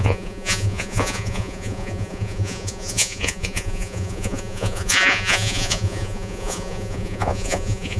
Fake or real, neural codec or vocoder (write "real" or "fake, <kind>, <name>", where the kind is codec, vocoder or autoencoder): fake, vocoder, Vocos